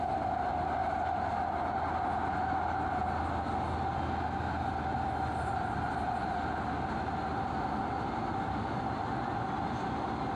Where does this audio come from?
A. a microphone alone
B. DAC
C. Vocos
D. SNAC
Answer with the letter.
A